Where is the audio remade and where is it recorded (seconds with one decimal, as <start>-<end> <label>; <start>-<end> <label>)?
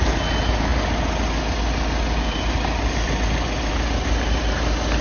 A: 0.0-5.0 recorded